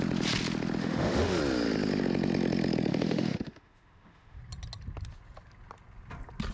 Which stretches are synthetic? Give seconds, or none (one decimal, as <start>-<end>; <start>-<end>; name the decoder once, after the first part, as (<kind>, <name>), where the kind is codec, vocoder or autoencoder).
0.8-1.4 (autoencoder, DAC-VAE); 2.9-4.4

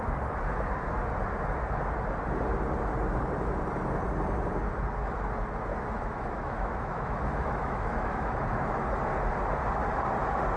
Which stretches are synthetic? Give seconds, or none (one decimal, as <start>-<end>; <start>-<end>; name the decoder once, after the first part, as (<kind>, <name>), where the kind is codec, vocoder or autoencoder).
5.7-8.5 (autoencoder, DAC-VAE)

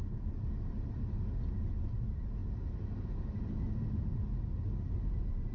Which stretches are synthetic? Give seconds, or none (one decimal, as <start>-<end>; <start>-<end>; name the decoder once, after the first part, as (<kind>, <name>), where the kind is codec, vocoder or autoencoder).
none

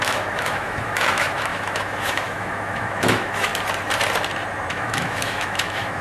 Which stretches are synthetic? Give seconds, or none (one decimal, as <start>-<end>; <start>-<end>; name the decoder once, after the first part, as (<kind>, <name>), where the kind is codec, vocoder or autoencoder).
0.0-3.5 (autoencoder, DAC-VAE); 4.7-6.0

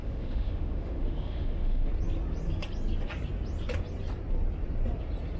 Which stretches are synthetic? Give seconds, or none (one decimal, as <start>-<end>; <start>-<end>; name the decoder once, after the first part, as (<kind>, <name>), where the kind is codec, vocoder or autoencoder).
0.0-1.9 (autoencoder, DAC-VAE)